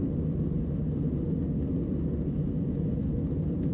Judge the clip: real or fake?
real